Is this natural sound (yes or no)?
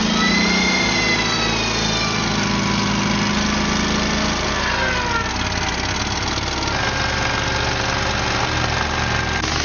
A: yes